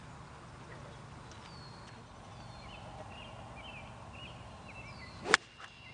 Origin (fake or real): real